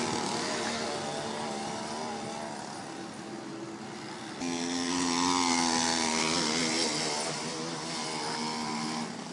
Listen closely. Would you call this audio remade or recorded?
recorded